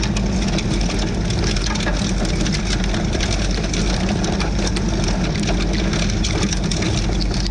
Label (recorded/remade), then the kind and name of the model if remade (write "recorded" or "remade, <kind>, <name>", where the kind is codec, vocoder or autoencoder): recorded